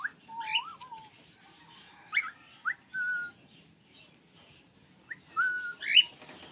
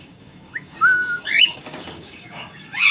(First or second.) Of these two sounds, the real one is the first